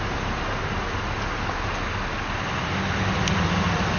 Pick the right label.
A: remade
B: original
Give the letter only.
B